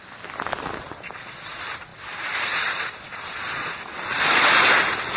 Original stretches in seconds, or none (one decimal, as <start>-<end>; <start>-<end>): 0.0-1.9; 2.9-4.1; 4.8-5.2